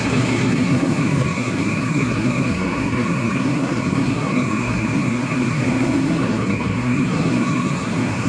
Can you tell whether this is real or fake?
fake